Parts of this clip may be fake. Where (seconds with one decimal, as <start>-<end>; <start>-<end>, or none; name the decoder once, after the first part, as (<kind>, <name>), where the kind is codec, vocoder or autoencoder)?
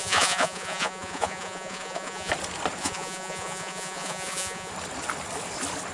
0.0-2.3 (vocoder, Vocos); 2.8-4.7